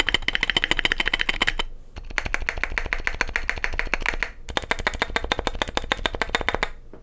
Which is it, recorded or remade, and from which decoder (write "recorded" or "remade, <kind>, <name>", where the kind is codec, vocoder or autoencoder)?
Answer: recorded